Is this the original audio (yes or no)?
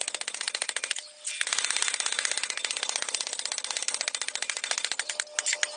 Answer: yes